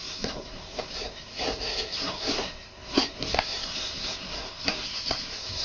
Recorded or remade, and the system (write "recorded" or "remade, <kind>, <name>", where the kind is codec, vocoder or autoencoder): remade, codec, SNAC